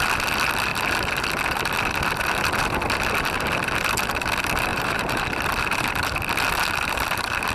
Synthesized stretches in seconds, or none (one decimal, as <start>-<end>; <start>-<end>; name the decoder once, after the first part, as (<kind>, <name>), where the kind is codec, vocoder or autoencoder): 4.7-5.2 (vocoder, BigVGAN v2)